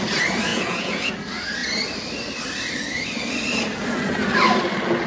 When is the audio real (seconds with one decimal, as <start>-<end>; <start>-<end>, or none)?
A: 0.0-0.5; 1.1-5.1